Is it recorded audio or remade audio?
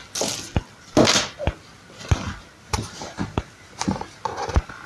recorded